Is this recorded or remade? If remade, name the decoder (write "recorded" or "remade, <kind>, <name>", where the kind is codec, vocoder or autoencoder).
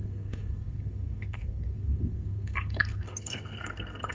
remade, codec, SNAC